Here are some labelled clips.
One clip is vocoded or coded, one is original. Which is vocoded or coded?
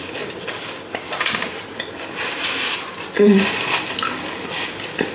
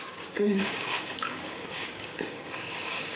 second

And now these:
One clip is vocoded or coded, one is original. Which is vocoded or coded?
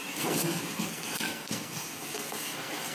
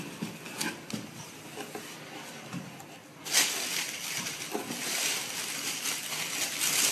first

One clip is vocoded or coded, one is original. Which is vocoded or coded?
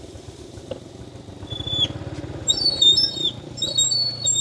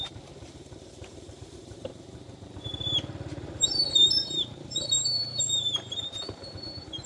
second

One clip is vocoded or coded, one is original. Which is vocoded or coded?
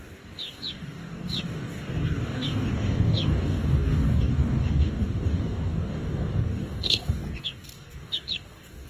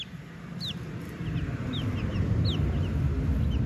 first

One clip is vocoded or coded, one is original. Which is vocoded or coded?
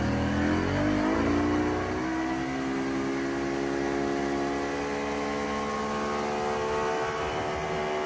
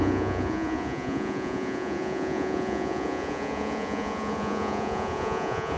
second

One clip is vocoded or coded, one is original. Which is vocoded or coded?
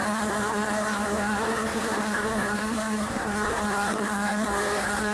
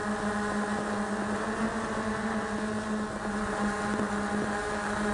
first